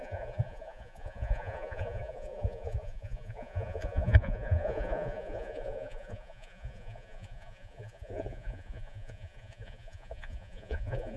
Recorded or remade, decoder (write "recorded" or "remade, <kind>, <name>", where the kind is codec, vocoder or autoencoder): remade, vocoder, Vocos